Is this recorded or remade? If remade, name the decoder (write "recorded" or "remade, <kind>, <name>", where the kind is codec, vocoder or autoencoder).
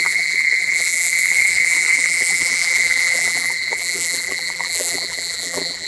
remade, vocoder, BigVGAN v2